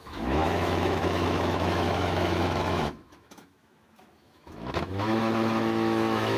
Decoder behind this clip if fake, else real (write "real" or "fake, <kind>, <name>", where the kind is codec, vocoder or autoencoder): fake, autoencoder, DAC-VAE